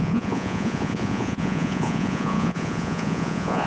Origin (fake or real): fake